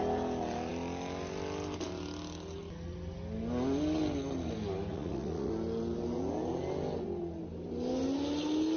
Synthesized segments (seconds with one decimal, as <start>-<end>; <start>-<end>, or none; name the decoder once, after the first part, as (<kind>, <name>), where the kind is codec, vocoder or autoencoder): 4.9-5.5 (vocoder, Vocos)